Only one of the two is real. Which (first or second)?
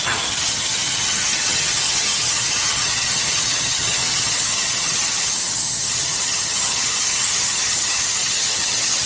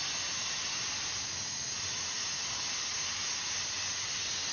second